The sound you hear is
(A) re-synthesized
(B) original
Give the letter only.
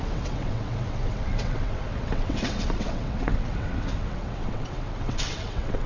A